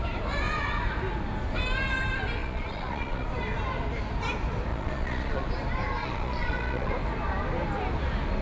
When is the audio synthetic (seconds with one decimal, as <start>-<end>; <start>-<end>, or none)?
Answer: 2.4-3.3; 4.7-5.5; 6.0-6.9